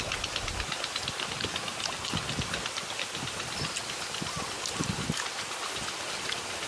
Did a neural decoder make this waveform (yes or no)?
no